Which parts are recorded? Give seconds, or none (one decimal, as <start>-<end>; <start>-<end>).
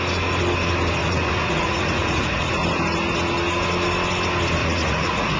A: 0.0-1.0; 2.5-4.6